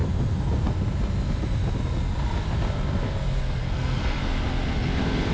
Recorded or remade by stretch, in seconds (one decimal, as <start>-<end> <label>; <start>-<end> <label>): 0.0-3.6 recorded; 3.6-4.2 remade; 4.2-5.3 recorded